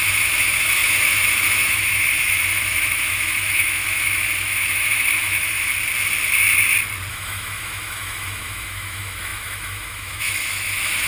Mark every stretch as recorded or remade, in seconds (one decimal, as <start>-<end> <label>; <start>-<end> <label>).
0.0-5.7 remade; 5.7-7.1 recorded; 7.1-11.1 remade